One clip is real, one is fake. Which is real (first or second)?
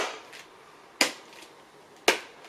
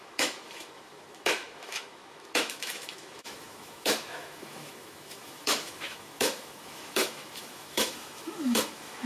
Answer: first